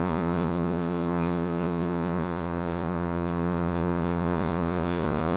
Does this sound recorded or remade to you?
remade